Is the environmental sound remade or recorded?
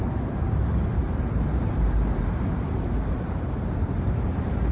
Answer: remade